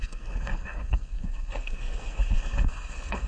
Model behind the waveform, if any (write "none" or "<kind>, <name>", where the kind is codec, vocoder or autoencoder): codec, SNAC